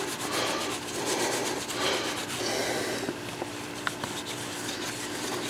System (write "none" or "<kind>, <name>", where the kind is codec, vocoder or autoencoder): none